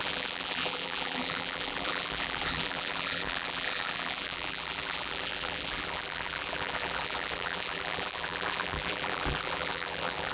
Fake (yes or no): yes